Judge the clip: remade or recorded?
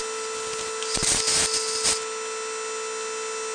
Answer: recorded